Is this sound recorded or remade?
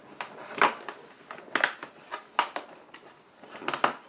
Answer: recorded